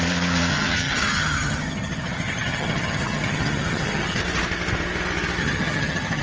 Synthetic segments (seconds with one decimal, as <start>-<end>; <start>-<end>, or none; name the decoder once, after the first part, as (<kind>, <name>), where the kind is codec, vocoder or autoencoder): 0.5-4.2 (vocoder, HiFi-GAN); 5.4-6.2